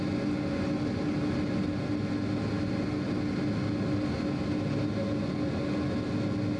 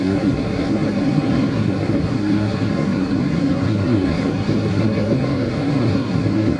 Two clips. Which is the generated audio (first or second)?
second